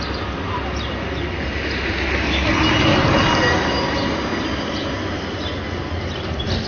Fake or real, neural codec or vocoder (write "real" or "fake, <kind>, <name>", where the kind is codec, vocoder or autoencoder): real